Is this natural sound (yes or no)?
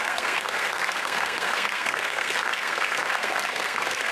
no